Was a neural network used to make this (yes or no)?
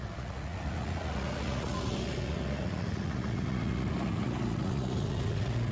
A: yes